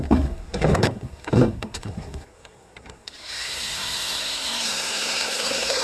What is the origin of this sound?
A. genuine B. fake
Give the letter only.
B